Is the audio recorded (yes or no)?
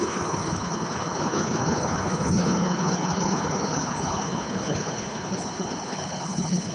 no